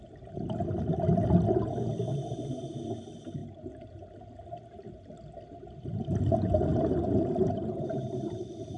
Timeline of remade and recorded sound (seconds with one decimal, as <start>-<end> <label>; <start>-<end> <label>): 0.0-3.4 recorded; 3.4-4.2 remade; 4.2-6.7 recorded; 6.7-8.8 remade